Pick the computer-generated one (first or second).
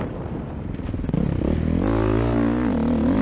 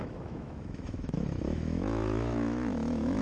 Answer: second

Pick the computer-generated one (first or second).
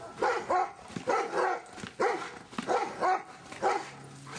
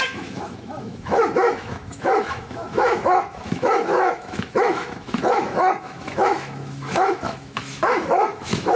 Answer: second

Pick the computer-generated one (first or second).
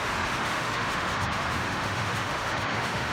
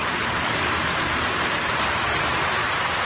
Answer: first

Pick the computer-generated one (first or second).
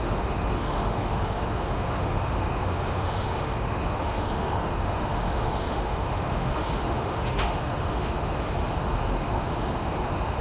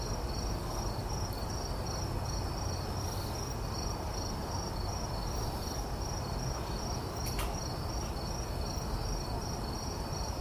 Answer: first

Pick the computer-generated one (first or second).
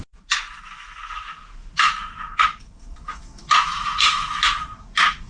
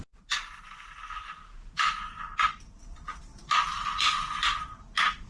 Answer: first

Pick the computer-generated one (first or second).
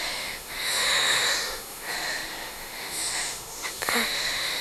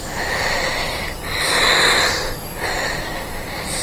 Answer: first